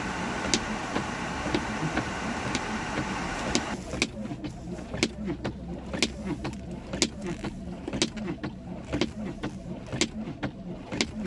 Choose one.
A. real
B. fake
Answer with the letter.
A